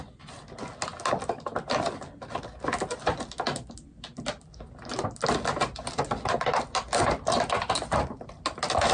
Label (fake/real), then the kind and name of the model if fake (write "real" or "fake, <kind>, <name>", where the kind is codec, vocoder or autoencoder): real